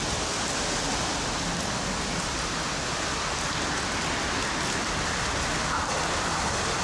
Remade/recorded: recorded